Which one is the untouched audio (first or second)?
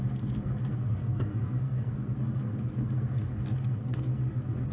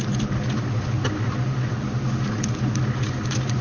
second